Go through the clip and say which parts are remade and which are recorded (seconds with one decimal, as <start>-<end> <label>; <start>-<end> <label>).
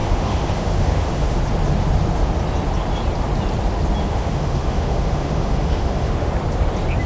0.0-1.4 remade; 1.4-4.0 recorded; 4.0-6.3 remade; 6.3-7.1 recorded